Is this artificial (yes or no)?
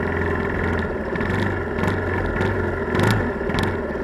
no